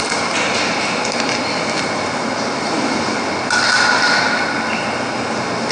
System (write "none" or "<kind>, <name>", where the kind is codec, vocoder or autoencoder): none